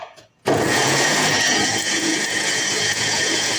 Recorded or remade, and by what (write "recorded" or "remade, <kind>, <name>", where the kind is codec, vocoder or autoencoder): remade, vocoder, Vocos